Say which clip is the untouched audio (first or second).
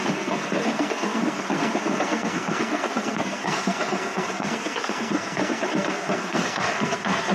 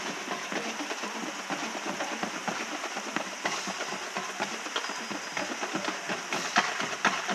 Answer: second